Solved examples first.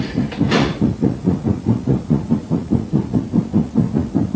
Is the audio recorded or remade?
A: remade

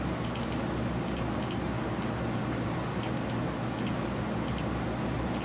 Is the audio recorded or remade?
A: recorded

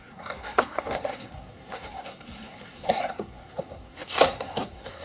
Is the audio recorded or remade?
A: remade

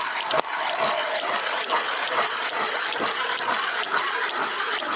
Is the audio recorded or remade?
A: recorded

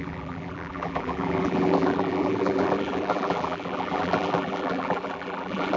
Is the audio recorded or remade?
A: remade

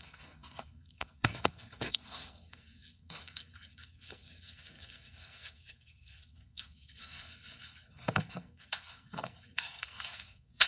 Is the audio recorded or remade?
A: remade